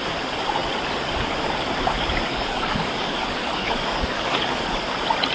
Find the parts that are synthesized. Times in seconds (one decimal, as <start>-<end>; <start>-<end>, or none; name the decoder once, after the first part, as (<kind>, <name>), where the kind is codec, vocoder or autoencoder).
2.3-4.8 (codec, DAC)